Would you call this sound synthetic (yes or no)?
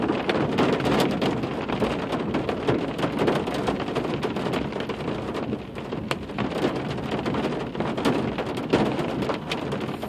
no